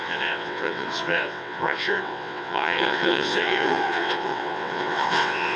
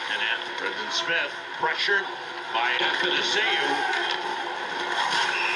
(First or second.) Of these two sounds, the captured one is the second